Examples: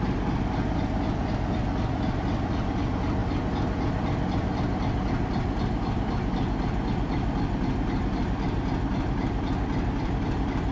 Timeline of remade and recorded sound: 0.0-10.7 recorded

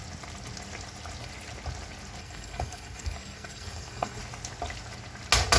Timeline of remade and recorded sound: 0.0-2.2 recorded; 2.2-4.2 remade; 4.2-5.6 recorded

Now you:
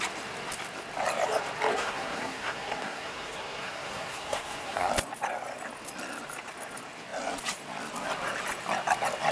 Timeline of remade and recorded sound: 0.0-1.7 recorded; 1.7-4.9 remade; 4.9-9.3 recorded

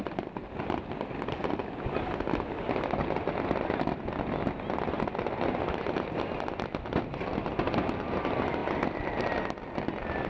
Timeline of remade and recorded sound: 0.0-8.6 recorded; 8.6-9.1 remade; 9.1-10.3 recorded